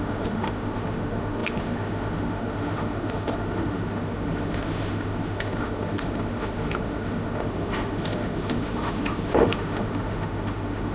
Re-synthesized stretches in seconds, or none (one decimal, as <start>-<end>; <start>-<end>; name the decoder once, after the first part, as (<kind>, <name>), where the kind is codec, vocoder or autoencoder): 0.0-10.9 (autoencoder, DAC-VAE)